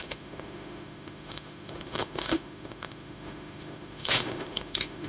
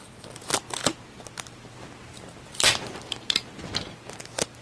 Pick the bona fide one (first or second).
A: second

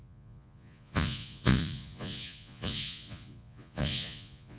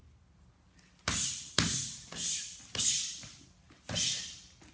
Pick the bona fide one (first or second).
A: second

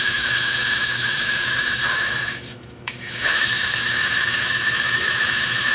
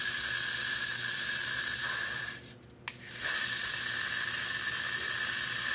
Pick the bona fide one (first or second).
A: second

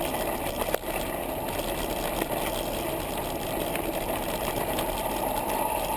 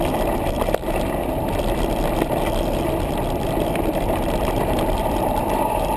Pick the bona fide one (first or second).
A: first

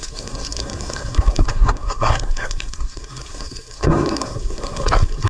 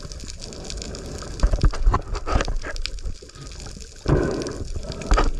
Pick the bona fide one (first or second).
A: second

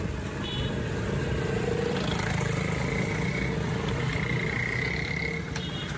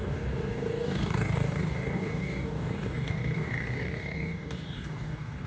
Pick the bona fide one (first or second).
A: first